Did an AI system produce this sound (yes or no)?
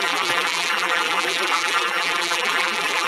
yes